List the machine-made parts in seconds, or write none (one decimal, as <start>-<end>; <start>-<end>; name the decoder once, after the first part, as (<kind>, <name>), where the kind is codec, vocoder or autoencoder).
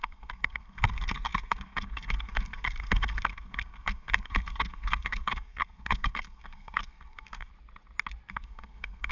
0.0-7.5 (codec, SNAC); 8.3-9.1